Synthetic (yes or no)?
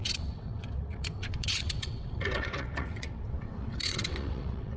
yes